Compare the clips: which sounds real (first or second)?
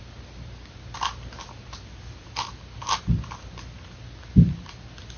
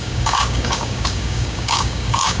first